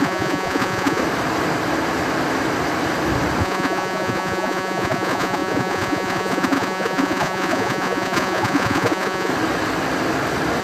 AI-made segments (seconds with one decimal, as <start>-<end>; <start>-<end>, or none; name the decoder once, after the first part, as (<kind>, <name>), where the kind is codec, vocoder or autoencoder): 0.0-1.0 (vocoder, Vocos); 3.4-9.3